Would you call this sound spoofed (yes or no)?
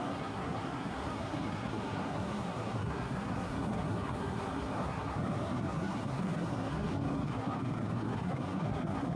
yes